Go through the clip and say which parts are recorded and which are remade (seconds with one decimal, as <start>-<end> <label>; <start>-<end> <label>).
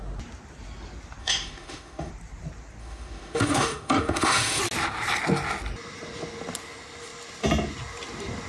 0.0-1.2 recorded; 1.2-2.1 remade; 2.1-2.8 recorded; 2.8-4.6 remade; 4.6-8.5 recorded